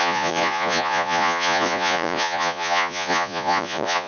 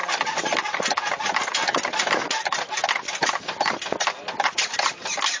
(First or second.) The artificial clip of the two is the first